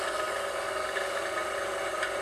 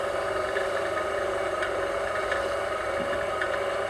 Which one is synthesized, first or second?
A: second